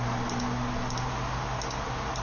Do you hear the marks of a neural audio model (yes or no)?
no